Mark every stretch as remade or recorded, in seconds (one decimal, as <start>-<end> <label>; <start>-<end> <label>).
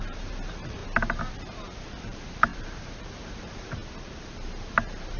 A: 0.0-0.8 remade; 0.8-2.0 recorded; 2.0-3.8 remade; 3.8-4.7 recorded; 4.7-5.2 remade